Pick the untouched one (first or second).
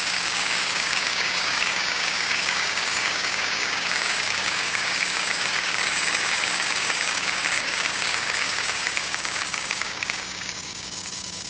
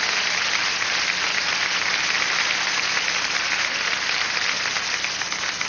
second